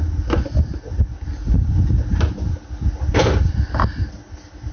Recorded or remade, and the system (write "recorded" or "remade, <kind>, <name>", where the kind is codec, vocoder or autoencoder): recorded